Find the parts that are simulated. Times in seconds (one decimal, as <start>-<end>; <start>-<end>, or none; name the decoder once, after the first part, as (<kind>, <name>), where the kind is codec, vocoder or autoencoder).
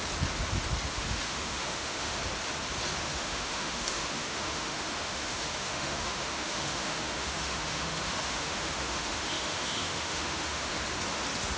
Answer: 0.9-2.2 (autoencoder, DAC-VAE); 3.0-10.7